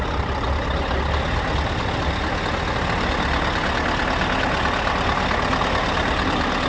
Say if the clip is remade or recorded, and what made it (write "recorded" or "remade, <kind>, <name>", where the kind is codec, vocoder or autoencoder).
recorded